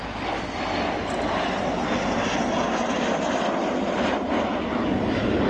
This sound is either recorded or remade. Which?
recorded